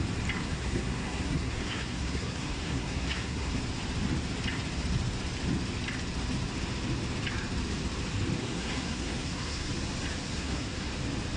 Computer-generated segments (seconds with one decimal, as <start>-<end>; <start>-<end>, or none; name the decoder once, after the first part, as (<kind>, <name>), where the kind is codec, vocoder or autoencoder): 0.4-3.6 (codec, SNAC); 8.4-9.7; 10.3-10.9